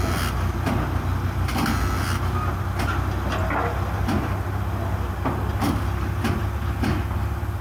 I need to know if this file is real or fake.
real